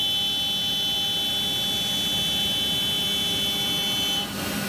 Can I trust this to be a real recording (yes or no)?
yes